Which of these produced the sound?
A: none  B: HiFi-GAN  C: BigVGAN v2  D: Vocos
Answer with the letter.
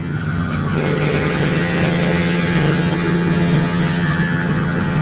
B